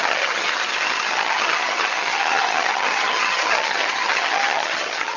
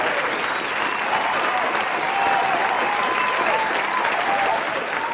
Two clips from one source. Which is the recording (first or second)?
second